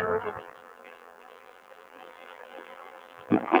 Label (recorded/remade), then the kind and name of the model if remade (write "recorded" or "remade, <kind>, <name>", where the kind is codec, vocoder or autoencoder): remade, vocoder, BigVGAN v2